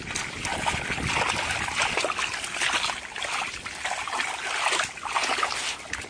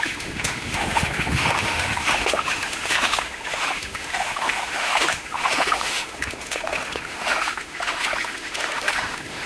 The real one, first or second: first